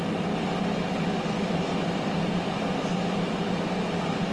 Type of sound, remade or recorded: recorded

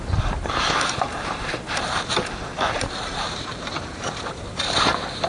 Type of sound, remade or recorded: remade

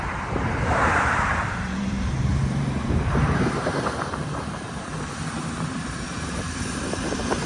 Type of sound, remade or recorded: remade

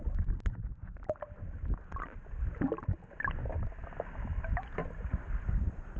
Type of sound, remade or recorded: recorded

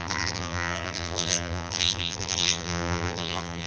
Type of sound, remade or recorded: remade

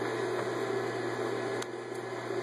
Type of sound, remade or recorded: recorded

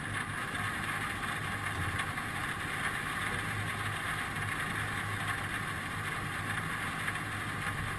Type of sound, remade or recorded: recorded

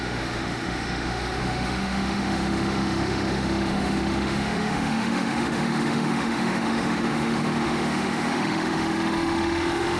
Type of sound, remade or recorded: remade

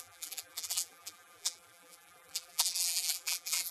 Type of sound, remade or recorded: remade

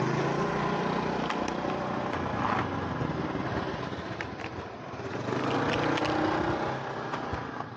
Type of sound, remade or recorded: recorded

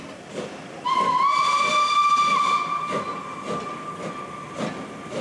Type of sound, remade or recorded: recorded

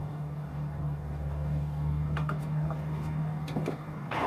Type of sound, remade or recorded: remade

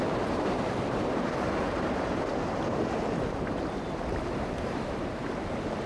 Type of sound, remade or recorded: remade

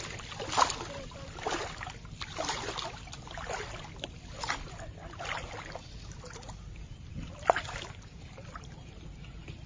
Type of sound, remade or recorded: recorded